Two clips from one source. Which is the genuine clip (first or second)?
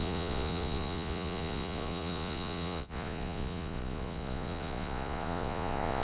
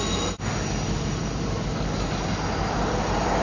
second